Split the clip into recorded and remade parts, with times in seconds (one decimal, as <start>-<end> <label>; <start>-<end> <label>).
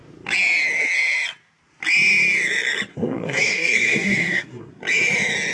0.0-2.9 recorded; 2.9-4.7 remade; 4.7-5.5 recorded